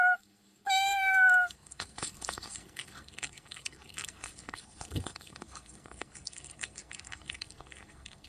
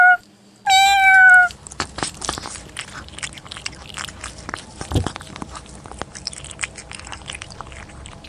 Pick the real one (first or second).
second